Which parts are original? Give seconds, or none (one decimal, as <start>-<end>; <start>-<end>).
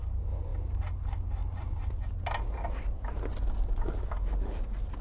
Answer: 0.0-5.0